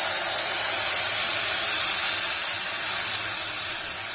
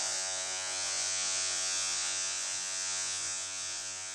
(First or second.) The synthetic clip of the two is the second